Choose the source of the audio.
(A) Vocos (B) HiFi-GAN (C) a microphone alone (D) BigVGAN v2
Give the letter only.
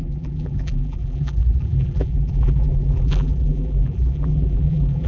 D